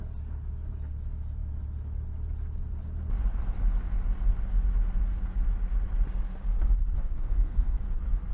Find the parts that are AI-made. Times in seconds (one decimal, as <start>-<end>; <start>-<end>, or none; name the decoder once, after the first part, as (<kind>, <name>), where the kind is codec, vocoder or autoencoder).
7.1-7.8 (codec, SNAC)

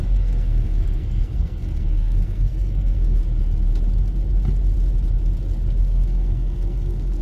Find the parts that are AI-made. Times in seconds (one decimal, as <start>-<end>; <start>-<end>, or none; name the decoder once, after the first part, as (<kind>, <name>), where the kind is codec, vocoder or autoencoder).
0.0-3.2 (codec, SNAC); 5.8-7.2

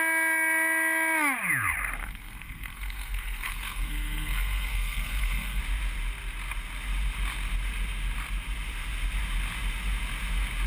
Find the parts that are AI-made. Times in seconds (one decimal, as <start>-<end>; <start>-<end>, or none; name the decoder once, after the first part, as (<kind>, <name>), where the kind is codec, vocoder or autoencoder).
2.0-5.6 (codec, SNAC)

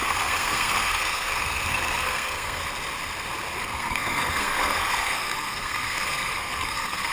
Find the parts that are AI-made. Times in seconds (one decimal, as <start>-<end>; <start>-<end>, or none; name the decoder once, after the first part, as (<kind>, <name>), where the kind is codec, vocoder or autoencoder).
0.0-2.6 (codec, SNAC); 3.6-7.1

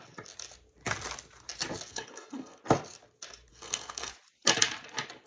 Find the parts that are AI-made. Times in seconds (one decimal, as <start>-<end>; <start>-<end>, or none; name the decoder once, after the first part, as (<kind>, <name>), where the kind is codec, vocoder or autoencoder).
1.9-2.6 (codec, SNAC); 3.5-4.1